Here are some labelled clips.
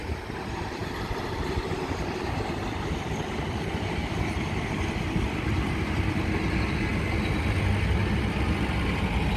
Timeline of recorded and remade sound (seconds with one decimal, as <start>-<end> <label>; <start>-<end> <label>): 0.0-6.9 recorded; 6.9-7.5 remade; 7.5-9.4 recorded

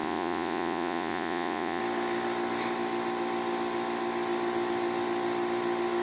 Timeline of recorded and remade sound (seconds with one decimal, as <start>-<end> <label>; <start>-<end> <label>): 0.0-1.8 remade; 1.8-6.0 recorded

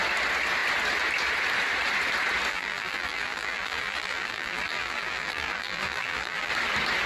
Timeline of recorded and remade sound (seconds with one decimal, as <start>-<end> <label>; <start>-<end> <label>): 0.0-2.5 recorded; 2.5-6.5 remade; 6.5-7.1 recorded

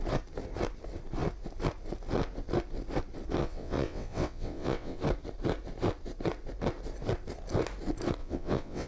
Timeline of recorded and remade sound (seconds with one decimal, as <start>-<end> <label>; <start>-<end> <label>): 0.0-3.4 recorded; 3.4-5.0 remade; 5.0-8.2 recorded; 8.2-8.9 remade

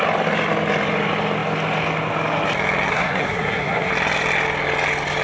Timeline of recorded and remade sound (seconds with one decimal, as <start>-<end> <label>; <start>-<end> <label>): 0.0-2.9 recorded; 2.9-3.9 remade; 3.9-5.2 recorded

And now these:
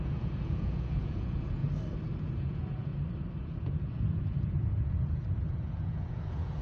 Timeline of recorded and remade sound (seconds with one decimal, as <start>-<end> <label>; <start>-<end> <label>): 0.0-1.6 remade; 1.6-2.2 recorded; 2.2-2.9 remade; 2.9-3.4 recorded; 3.4-6.6 remade

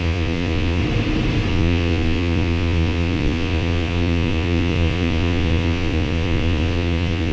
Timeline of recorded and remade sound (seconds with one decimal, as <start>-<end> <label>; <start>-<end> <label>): 0.0-0.8 remade; 0.8-1.5 recorded; 1.5-7.3 remade